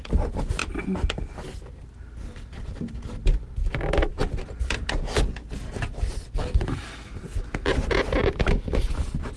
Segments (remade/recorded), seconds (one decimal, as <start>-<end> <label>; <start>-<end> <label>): 0.0-9.4 recorded